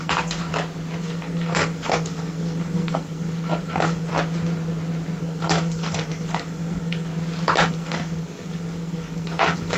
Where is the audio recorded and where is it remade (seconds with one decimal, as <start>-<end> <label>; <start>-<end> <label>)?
0.0-0.5 remade; 0.5-1.0 recorded; 1.0-4.1 remade; 4.1-5.2 recorded; 5.2-7.1 remade; 7.1-7.7 recorded; 7.7-9.8 remade

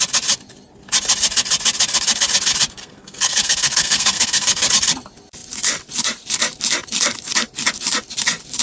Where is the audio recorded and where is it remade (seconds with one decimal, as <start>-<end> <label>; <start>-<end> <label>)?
0.0-2.8 recorded; 2.8-4.7 remade; 4.7-8.6 recorded